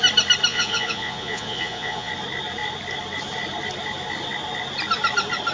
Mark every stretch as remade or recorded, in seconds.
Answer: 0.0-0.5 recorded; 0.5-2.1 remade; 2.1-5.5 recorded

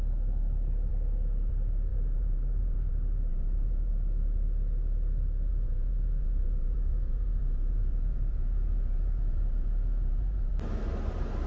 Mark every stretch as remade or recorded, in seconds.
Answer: 0.0-1.9 recorded; 1.9-2.9 remade; 2.9-3.3 recorded; 3.3-3.9 remade; 3.9-5.5 recorded; 5.5-10.5 remade; 10.5-11.5 recorded

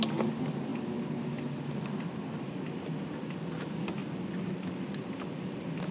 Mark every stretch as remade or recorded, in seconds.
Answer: 0.0-5.9 recorded

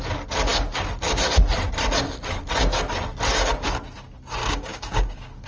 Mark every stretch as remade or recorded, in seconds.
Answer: 0.0-4.4 recorded; 4.4-5.5 remade

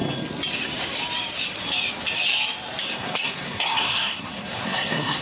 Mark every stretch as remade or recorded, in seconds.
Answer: 0.0-2.8 recorded; 2.8-5.2 remade

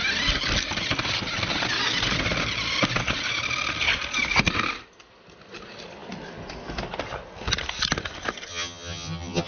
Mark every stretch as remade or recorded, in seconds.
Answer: 0.0-8.5 recorded; 8.5-9.5 remade

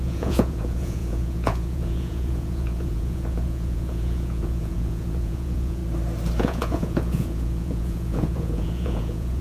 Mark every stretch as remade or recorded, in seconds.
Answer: 0.0-5.8 remade; 5.8-6.4 recorded; 6.4-9.4 remade